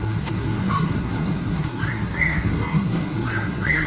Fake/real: fake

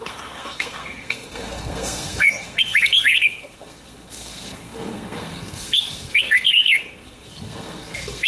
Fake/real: fake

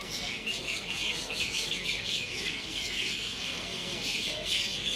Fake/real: fake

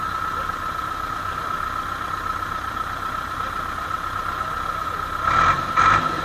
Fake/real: real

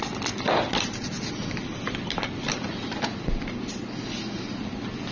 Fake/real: real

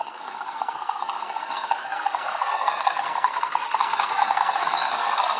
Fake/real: fake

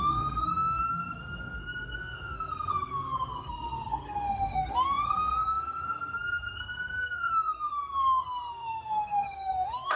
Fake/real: fake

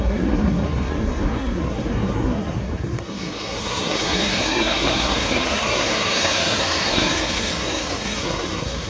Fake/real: fake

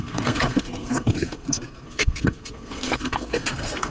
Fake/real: fake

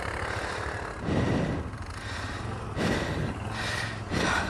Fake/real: real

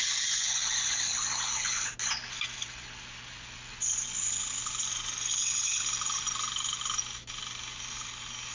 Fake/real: real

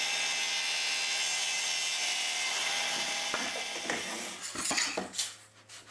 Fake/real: real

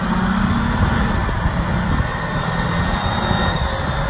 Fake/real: real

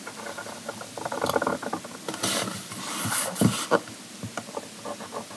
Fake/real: real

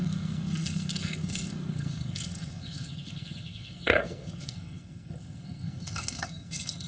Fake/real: fake